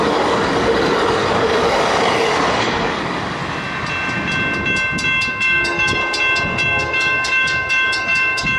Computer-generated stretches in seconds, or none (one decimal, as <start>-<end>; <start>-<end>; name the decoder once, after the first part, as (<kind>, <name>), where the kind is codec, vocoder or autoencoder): 0.0-3.4 (codec, DAC); 5.3-6.0; 6.8-8.6

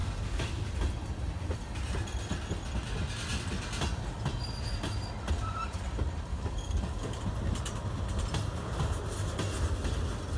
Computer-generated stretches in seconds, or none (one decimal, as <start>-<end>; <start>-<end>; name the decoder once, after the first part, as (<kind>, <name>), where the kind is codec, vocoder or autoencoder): 0.0-0.7 (codec, DAC); 6.3-7.2